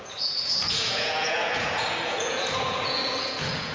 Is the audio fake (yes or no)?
yes